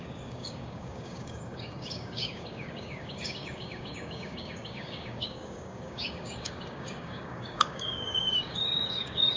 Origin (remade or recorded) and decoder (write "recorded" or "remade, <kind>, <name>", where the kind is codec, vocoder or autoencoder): remade, codec, DAC